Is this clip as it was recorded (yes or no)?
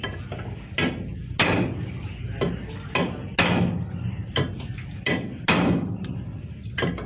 yes